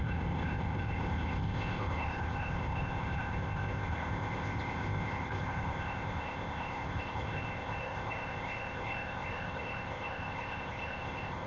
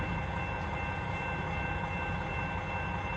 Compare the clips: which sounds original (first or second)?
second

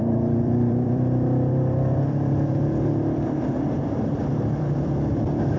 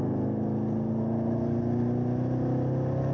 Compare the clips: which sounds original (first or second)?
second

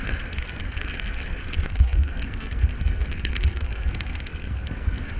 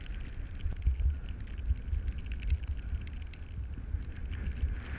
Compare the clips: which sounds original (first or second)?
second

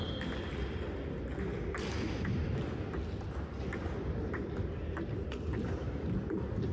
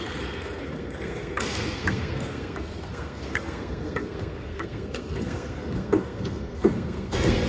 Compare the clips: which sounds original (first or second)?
first